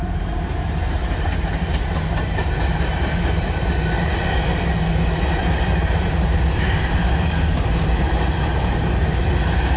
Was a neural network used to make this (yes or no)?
yes